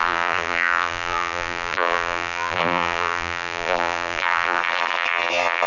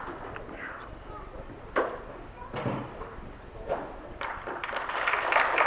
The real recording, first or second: second